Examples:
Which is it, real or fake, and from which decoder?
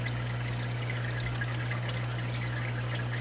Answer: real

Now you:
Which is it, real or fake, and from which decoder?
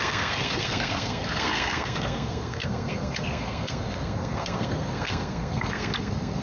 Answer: fake, codec, SNAC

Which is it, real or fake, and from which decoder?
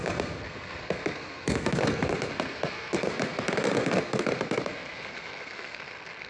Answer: fake, codec, SNAC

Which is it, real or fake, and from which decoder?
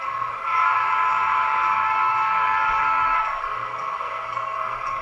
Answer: fake, codec, SNAC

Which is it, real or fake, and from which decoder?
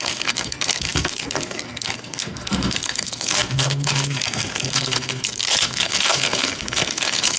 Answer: fake, codec, SNAC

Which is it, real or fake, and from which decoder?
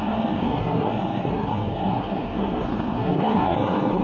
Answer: fake, codec, SNAC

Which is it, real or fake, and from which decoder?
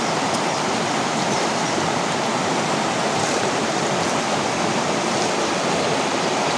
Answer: real